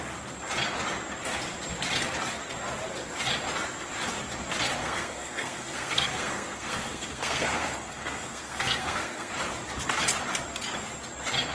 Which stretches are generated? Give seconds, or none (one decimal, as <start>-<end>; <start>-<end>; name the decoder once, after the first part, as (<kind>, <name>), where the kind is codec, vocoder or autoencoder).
4.8-9.3 (codec, SNAC)